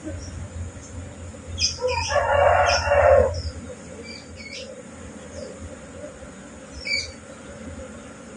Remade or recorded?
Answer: recorded